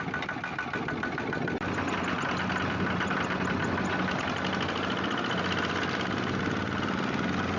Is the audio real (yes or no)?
yes